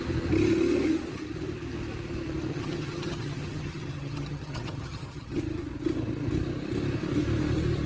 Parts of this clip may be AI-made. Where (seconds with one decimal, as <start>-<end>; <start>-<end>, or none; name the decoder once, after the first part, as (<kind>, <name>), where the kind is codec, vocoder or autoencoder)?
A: 2.5-5.4 (vocoder, HiFi-GAN)